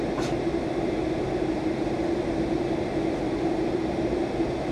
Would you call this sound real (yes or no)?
yes